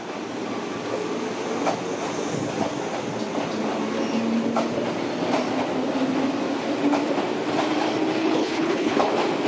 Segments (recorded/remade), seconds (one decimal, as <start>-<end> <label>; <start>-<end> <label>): 0.0-8.2 recorded; 8.2-9.1 remade; 9.1-9.5 recorded